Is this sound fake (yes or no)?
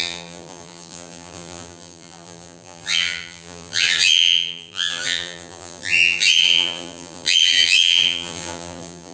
yes